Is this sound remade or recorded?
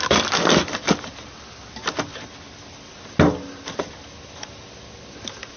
recorded